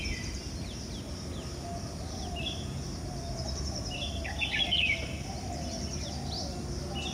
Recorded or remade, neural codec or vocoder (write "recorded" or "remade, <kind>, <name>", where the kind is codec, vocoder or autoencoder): recorded